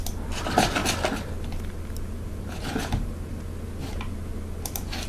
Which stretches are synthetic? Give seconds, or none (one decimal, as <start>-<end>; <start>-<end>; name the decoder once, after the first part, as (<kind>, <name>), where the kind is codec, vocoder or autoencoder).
none